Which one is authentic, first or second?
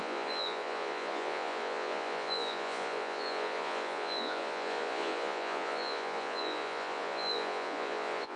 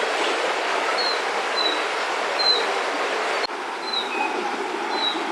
second